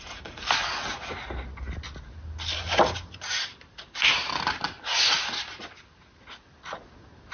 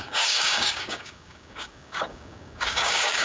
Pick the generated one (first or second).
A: second